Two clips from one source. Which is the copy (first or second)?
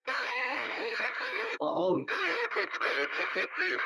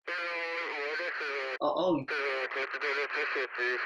first